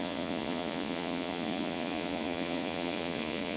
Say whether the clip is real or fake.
fake